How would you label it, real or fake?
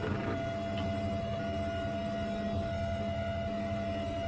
real